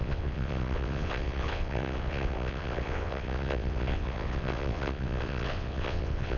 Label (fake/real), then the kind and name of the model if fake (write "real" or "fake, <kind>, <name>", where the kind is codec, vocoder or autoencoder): fake, vocoder, WaveNeXt